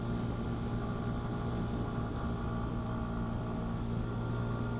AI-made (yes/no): no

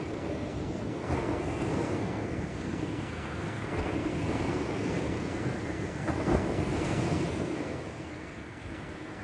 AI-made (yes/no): yes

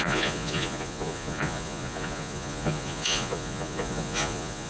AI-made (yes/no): yes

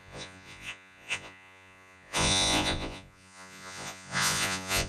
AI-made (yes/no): yes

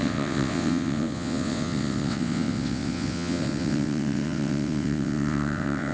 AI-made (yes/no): yes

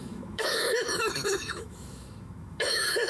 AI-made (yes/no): yes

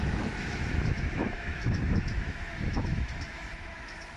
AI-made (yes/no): yes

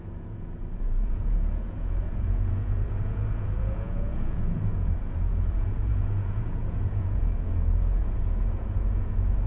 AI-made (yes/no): yes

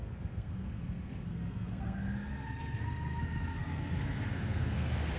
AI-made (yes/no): yes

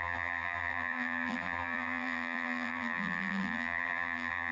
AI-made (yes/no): yes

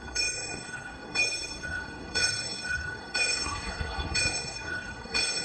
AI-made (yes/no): yes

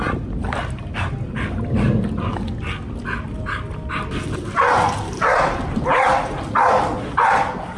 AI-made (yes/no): no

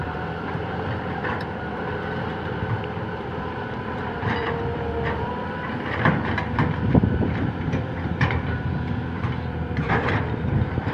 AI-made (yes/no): yes